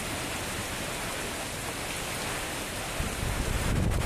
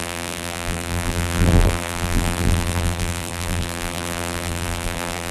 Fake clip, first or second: second